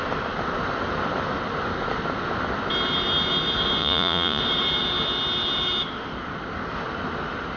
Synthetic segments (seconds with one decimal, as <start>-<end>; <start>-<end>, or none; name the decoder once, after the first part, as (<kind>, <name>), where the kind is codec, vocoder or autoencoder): 3.8-4.4 (vocoder, Vocos)